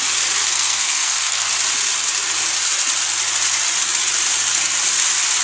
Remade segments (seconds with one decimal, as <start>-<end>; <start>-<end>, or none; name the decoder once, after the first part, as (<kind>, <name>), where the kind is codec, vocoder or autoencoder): 0.4-1.5 (codec, SNAC)

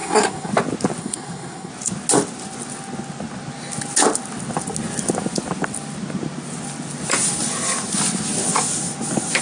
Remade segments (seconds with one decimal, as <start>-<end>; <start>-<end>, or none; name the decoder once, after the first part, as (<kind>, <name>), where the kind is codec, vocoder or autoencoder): 0.0-0.5 (codec, SNAC); 1.0-1.7

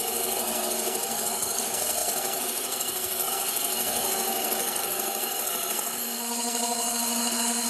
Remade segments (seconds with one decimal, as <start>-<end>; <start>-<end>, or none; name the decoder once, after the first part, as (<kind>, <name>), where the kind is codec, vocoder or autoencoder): 0.0-7.7 (codec, SNAC)

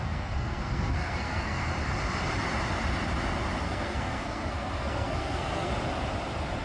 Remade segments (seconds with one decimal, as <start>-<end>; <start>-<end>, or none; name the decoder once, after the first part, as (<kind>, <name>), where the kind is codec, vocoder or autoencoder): 0.0-1.7 (codec, SNAC); 3.6-5.7

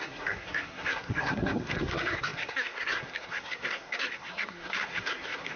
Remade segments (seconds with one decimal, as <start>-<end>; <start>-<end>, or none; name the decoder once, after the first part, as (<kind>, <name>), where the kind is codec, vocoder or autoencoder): 0.0-5.6 (codec, SNAC)

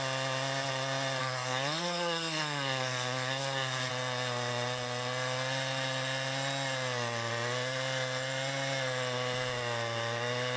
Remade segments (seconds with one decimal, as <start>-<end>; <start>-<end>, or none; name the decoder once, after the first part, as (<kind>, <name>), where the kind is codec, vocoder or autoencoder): 1.2-3.9 (codec, SNAC)

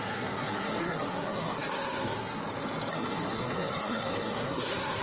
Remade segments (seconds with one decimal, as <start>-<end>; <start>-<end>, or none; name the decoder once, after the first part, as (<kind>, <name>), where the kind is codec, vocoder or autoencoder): 0.0-2.4 (codec, SNAC); 2.9-5.0

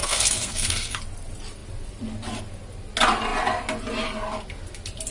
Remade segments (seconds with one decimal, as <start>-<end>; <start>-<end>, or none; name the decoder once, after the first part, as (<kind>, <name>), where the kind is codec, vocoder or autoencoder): 0.0-1.0 (codec, SNAC)